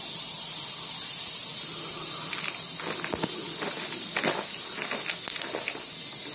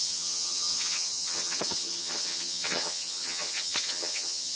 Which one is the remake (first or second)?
second